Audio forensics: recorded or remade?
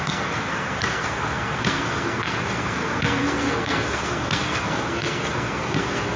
remade